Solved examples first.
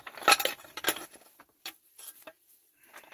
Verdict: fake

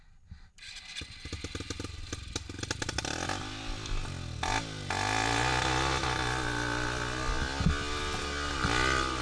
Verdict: real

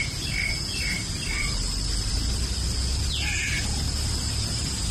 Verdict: real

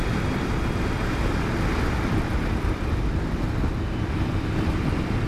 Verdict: fake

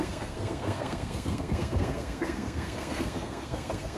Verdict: fake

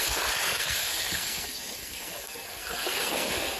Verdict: fake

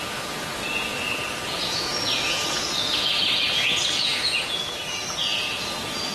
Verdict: fake